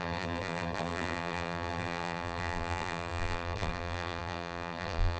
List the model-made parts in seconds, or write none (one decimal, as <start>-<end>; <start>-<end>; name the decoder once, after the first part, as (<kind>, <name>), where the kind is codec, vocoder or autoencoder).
0.0-5.2 (vocoder, BigVGAN v2)